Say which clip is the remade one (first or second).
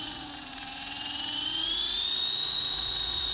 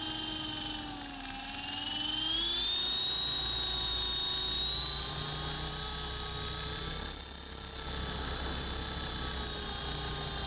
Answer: first